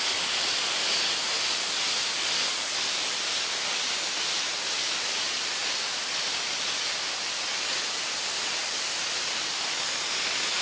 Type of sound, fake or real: real